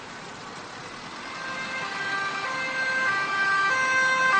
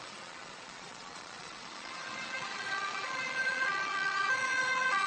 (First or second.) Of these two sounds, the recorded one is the first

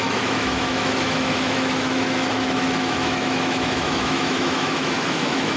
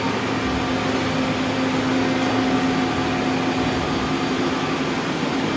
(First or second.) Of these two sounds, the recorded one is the second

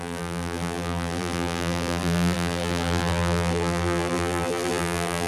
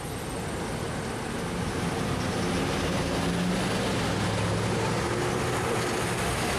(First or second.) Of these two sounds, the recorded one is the second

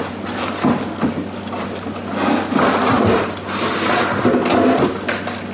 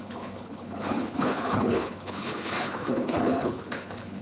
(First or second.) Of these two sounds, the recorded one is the first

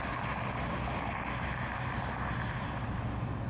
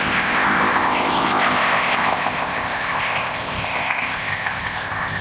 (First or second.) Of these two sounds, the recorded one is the first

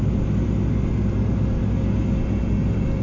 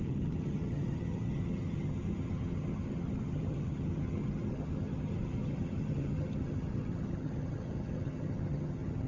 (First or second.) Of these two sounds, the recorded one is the first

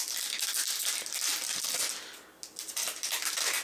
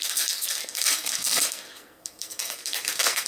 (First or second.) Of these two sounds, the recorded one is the first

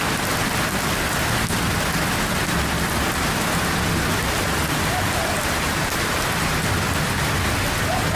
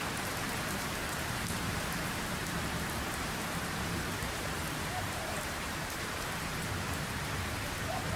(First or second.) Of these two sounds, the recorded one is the first